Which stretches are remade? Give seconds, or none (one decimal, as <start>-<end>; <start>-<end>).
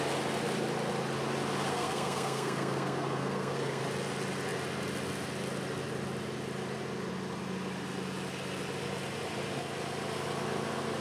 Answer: 1.7-3.8